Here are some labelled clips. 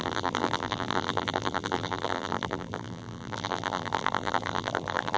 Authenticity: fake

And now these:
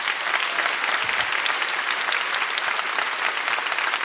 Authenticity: real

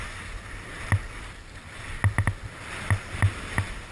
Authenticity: real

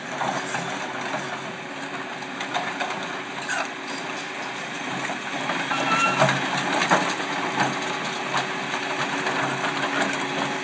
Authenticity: real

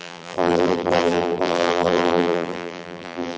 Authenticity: fake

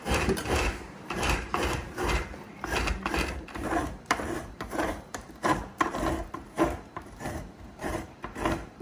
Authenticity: fake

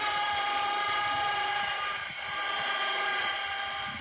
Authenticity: fake